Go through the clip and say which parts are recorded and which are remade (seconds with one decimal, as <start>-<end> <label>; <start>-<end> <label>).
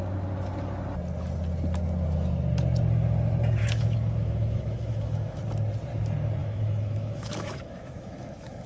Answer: 0.0-3.6 recorded; 3.6-5.4 remade; 5.4-6.4 recorded; 6.4-8.7 remade